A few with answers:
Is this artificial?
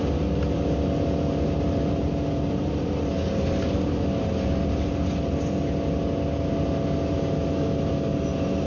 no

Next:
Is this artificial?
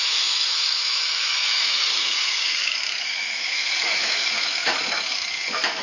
yes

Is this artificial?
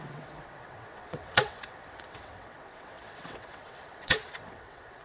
yes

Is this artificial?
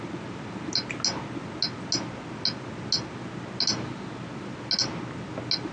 no